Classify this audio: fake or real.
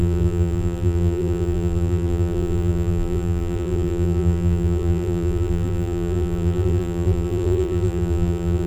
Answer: fake